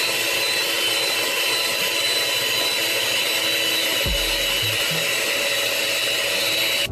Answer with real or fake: real